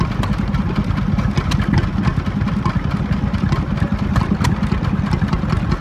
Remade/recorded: recorded